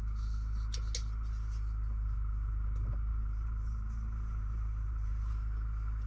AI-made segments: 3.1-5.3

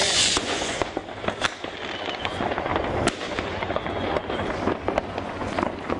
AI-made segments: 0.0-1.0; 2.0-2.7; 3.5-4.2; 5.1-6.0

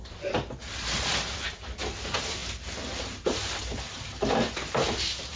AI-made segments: none

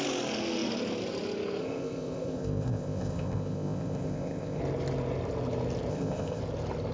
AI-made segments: 1.6-4.6; 5.9-6.4

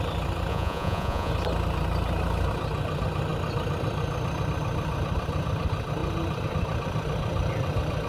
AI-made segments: 0.5-1.3

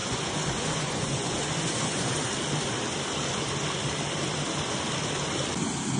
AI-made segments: 0.0-2.3

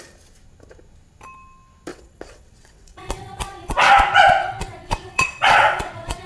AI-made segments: 1.9-3.9; 4.4-6.3